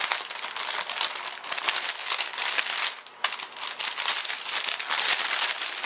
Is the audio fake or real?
real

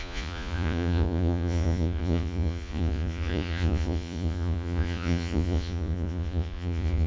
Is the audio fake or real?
fake